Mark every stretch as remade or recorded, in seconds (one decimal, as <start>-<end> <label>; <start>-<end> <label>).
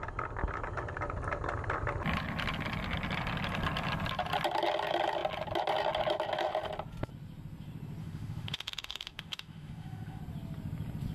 0.0-8.0 recorded; 8.0-10.2 remade; 10.2-11.1 recorded